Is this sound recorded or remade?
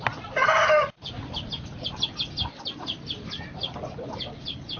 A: recorded